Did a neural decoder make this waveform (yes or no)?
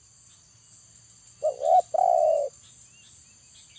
no